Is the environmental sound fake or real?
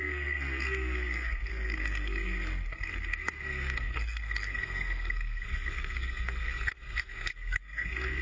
fake